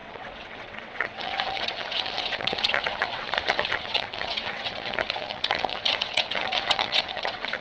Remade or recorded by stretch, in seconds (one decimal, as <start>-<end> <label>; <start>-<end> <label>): 0.0-7.6 remade